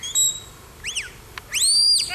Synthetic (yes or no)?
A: no